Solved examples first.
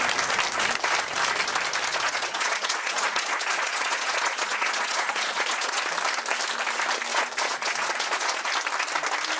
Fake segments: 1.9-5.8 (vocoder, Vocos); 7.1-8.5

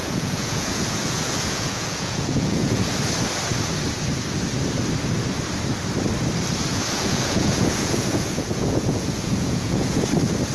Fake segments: 0.0-2.8 (vocoder, Vocos); 6.7-10.0

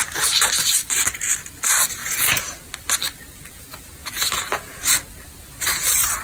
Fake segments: 2.0-2.5 (vocoder, Vocos); 4.0-4.8

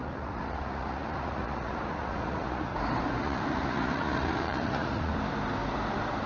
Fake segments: 0.0-2.7 (vocoder, Vocos); 3.2-5.1

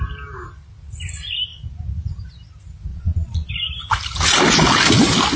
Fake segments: 2.9-3.5 (vocoder, Vocos)

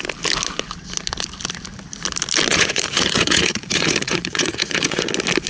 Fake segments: 2.5-5.1 (vocoder, Vocos)

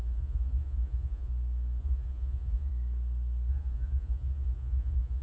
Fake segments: 0.0-1.3 (vocoder, Vocos); 1.8-2.7; 3.5-5.2